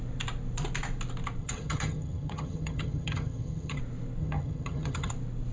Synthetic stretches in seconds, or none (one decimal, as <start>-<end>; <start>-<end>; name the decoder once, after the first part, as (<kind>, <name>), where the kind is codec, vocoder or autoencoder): 1.4-3.8 (vocoder, HiFi-GAN); 4.2-5.1